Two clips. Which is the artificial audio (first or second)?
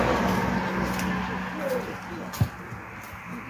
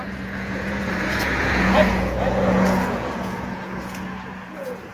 second